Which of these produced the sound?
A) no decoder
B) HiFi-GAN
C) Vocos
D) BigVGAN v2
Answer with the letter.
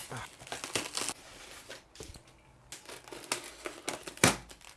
A